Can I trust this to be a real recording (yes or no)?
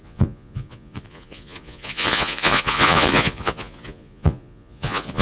no